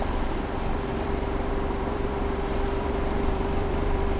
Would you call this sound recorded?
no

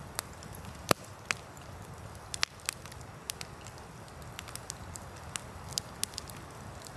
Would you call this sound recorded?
yes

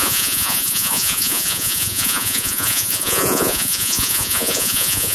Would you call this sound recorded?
no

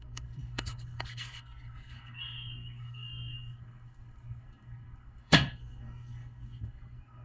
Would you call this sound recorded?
no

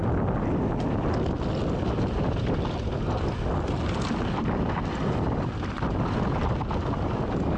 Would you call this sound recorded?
yes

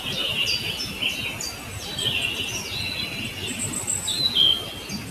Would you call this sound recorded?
yes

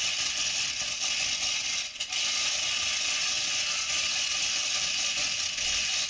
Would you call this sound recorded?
no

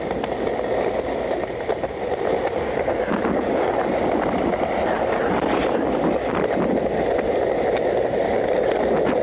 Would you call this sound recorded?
yes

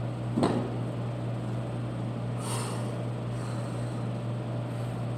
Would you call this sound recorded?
yes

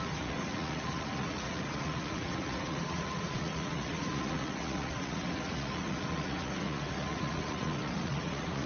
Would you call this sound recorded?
no